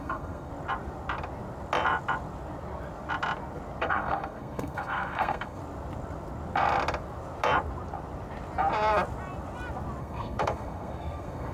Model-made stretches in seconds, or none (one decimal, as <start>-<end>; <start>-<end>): 0.0-0.5; 3.8-5.6; 10.0-11.5